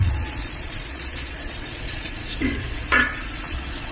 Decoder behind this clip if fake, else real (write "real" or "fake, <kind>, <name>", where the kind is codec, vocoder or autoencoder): fake, vocoder, Vocos